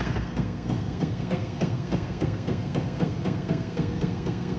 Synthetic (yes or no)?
yes